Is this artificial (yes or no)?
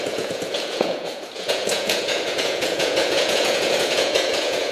yes